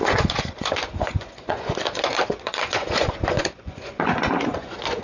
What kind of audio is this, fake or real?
fake